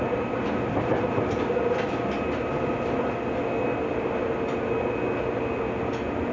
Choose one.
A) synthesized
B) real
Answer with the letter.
B